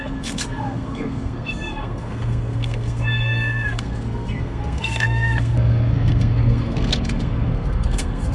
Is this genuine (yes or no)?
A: no